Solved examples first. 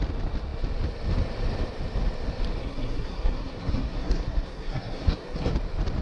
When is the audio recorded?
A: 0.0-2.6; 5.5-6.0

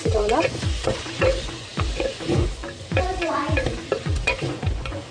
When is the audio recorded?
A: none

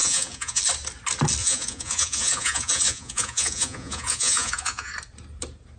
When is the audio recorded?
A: 0.6-1.4; 4.9-5.8